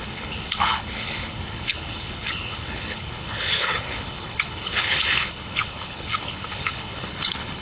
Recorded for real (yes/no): no